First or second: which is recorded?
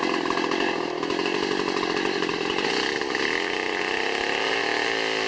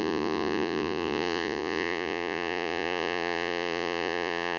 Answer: first